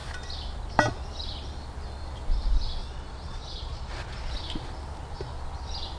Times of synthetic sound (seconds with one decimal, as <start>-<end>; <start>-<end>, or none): 2.8-4.4